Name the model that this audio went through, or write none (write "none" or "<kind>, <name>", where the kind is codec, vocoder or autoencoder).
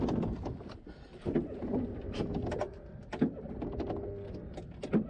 none